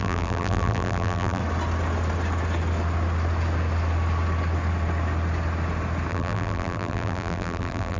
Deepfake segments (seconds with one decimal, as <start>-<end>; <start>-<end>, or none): 0.0-1.4; 6.1-8.0